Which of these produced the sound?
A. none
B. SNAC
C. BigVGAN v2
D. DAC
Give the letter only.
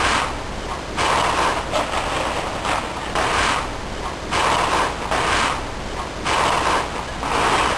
A